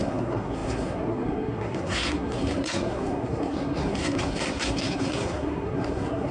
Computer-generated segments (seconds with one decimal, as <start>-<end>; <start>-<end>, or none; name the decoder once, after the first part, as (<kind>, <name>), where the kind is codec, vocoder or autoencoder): 0.0-6.3 (codec, SNAC)